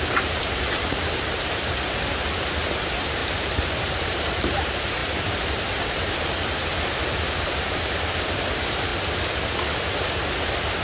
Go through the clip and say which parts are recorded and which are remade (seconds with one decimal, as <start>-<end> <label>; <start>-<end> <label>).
0.0-3.2 remade; 3.2-3.7 recorded; 3.7-8.9 remade; 8.9-10.0 recorded; 10.0-10.8 remade